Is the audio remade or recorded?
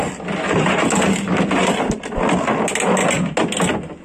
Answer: recorded